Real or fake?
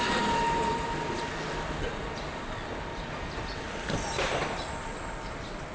real